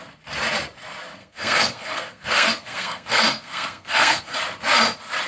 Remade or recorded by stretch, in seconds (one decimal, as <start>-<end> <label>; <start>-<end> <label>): 0.0-1.2 recorded; 1.2-4.4 remade; 4.4-5.3 recorded

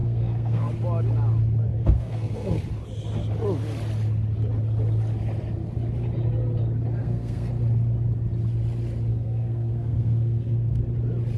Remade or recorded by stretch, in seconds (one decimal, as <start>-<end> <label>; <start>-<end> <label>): 0.0-0.7 remade; 0.7-1.7 recorded; 1.7-2.6 remade; 2.6-7.0 recorded; 7.0-7.5 remade; 7.5-9.1 recorded; 9.1-10.8 remade; 10.8-11.4 recorded

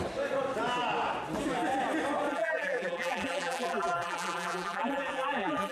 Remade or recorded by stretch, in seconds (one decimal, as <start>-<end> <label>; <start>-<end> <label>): 0.0-2.3 recorded; 2.3-5.7 remade